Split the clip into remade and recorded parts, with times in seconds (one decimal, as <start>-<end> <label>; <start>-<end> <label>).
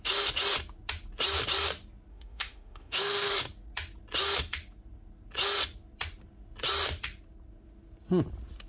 0.0-2.1 recorded; 2.1-3.3 remade; 3.3-8.7 recorded